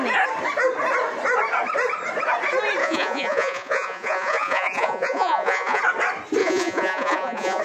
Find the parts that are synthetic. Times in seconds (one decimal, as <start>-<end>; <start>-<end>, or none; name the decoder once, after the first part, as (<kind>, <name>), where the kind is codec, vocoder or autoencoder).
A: 2.8-5.8 (vocoder, Vocos); 6.4-7.6